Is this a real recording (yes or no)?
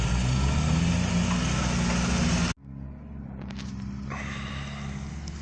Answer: yes